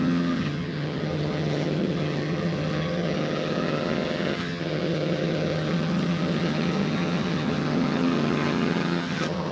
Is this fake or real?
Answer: fake